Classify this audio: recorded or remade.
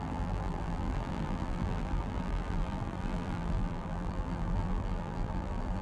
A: remade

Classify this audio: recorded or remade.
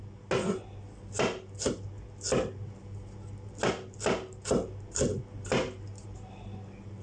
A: recorded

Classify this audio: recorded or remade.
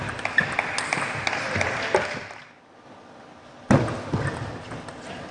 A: recorded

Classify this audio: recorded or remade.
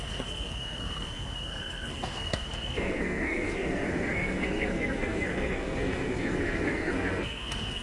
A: remade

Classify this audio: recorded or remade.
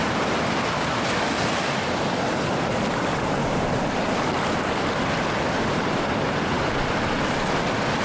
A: recorded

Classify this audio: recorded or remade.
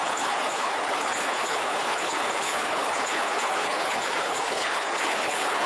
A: remade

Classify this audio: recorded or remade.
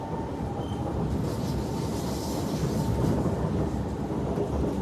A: recorded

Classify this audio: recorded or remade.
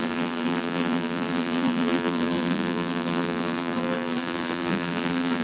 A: remade